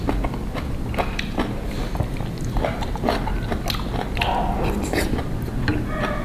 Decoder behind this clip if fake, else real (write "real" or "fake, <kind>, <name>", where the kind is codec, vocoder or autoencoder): real